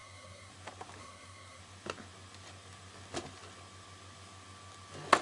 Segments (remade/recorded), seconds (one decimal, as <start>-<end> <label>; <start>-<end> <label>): 0.0-0.5 remade; 0.5-1.0 recorded; 1.0-1.6 remade; 1.6-5.2 recorded